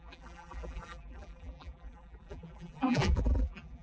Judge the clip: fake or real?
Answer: fake